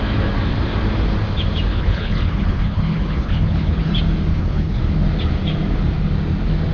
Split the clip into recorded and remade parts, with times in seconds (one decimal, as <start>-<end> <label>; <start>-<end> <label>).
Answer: 0.0-1.7 recorded; 1.7-3.9 remade; 3.9-4.3 recorded; 4.3-4.8 remade; 4.8-6.7 recorded